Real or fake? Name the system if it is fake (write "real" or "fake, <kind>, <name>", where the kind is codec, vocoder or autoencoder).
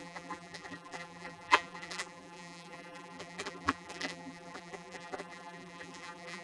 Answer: fake, vocoder, BigVGAN v2